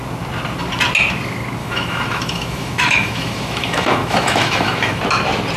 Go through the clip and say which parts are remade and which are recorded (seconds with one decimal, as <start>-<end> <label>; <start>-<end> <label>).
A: 0.0-1.6 recorded; 1.6-5.0 remade; 5.0-5.6 recorded

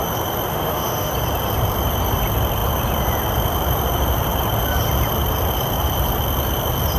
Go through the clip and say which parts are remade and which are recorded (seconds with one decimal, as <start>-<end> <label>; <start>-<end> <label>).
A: 0.0-0.5 recorded; 0.5-1.1 remade; 1.1-7.0 recorded

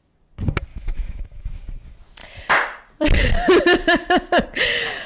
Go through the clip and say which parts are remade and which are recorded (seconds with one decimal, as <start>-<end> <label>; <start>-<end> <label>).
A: 0.0-0.7 recorded; 0.7-1.6 remade; 1.6-5.1 recorded